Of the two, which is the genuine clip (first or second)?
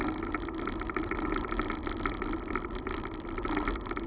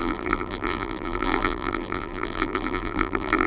first